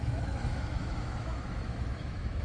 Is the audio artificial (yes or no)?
yes